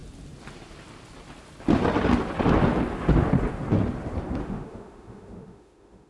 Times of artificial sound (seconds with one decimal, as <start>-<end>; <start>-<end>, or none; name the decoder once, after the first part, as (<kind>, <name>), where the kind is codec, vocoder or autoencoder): 4.4-6.1 (autoencoder, DAC-VAE)